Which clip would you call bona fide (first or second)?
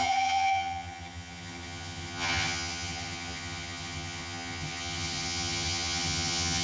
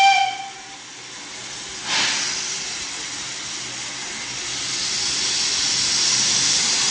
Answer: second